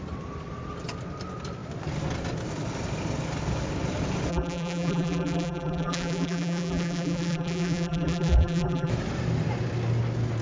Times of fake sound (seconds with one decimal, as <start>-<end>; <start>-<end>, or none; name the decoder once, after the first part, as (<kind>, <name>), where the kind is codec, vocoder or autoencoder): 4.3-8.9 (vocoder, BigVGAN v2)